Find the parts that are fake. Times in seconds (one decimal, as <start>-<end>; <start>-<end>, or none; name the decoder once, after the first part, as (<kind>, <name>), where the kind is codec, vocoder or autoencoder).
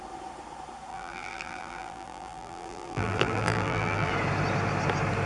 0.9-4.1 (vocoder, BigVGAN v2)